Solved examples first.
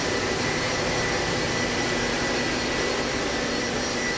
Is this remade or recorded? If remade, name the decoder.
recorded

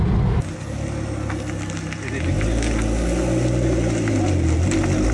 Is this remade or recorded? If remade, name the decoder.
recorded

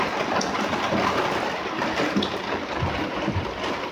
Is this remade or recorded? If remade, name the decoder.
recorded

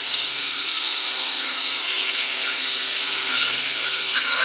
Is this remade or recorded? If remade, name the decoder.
remade, codec, SNAC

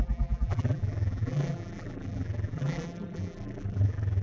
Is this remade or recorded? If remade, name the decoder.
remade, vocoder, BigVGAN v2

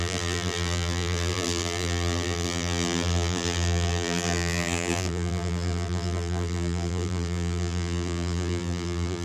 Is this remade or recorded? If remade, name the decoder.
remade, vocoder, BigVGAN v2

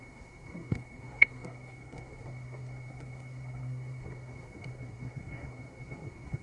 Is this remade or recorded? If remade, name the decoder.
remade, codec, SNAC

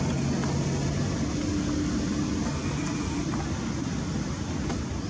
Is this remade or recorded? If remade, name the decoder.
recorded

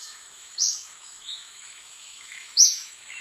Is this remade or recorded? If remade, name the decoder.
remade, autoencoder, DAC-VAE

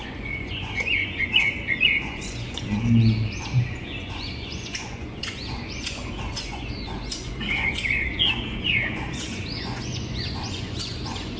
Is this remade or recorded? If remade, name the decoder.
remade, vocoder, Vocos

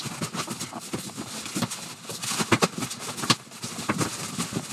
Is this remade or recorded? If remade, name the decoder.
recorded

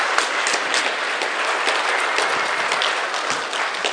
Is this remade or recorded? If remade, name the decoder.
recorded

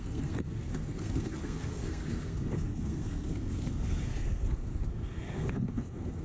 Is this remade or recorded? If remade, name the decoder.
remade, codec, SNAC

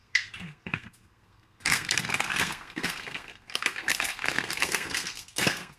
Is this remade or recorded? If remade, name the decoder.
remade, codec, SNAC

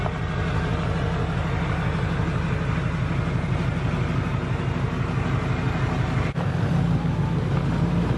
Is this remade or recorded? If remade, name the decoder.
recorded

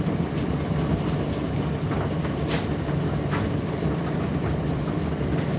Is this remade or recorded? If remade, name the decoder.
recorded